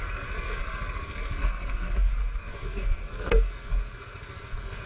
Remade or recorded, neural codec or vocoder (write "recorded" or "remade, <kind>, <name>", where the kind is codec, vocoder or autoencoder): remade, codec, SNAC